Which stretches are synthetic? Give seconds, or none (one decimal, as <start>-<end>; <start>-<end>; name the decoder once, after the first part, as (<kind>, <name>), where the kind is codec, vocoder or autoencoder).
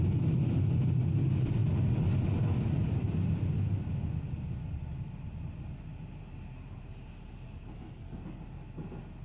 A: 7.6-8.4 (codec, SNAC)